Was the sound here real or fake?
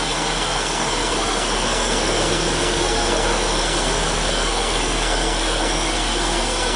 fake